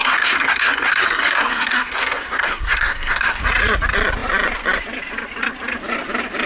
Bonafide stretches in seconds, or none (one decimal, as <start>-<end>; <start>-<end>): 3.4-6.5